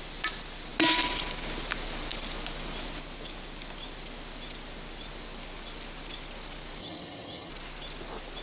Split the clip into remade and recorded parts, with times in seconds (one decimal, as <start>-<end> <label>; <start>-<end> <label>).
0.0-6.8 recorded; 6.8-7.5 remade; 7.5-8.4 recorded